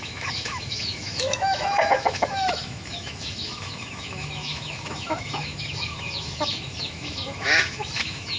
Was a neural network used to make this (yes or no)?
yes